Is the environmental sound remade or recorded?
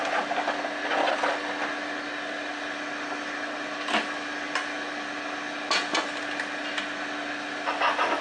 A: recorded